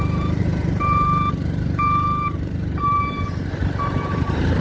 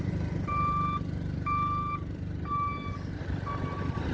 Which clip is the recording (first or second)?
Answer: second